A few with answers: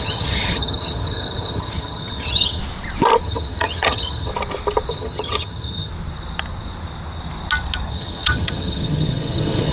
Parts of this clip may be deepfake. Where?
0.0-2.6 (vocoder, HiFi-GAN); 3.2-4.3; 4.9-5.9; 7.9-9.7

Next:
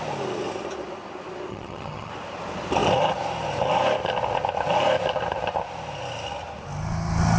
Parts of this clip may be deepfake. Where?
1.5-2.1 (vocoder, HiFi-GAN)